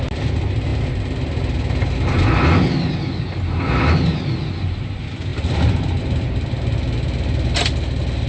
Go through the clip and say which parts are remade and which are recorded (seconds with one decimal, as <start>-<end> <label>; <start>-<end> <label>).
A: 0.0-8.3 recorded